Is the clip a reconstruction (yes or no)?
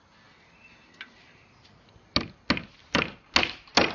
no